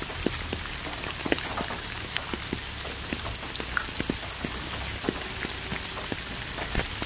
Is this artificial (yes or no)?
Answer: no